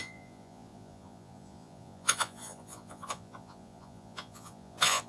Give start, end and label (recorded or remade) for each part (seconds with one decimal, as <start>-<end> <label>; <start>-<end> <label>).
0.0-5.1 remade